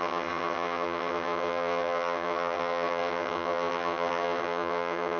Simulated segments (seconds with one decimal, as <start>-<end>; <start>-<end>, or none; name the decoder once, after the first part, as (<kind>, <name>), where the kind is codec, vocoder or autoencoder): 0.0-5.2 (vocoder, HiFi-GAN)